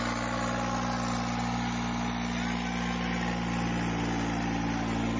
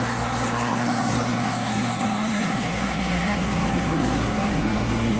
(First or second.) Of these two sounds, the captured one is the first